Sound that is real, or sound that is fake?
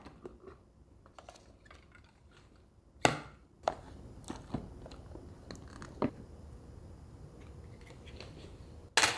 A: real